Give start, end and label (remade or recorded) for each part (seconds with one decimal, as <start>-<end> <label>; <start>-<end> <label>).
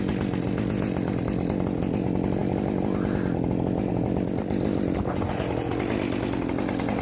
0.0-7.0 recorded